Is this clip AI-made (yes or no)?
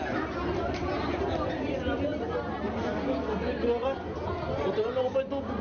no